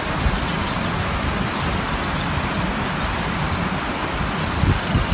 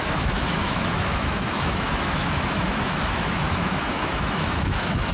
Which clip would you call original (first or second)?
first